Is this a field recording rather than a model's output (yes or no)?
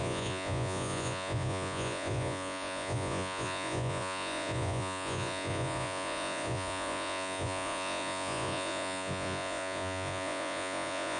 no